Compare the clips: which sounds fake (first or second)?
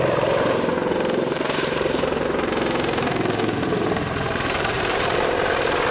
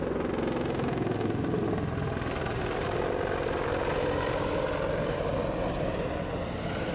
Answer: first